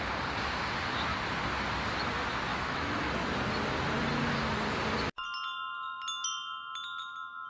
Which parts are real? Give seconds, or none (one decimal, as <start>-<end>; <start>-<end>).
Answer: 0.0-2.5; 3.1-7.5